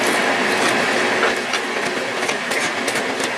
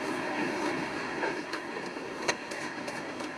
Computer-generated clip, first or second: second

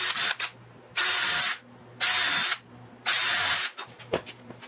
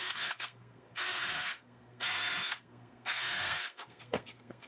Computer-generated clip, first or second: second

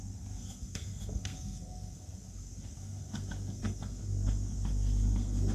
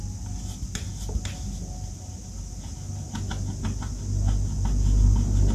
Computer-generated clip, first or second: first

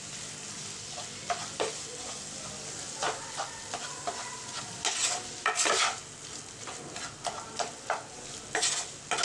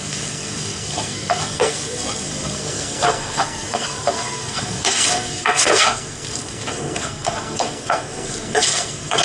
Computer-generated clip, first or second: second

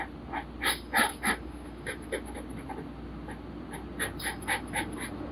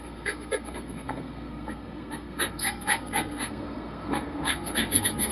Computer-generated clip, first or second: second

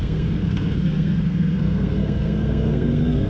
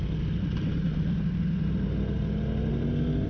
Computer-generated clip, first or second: first